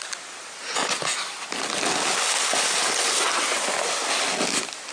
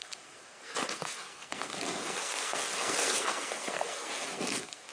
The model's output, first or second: second